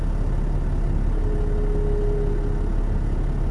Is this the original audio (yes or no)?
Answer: yes